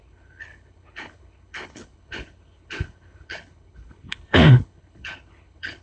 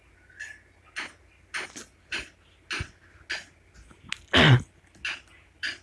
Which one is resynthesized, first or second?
first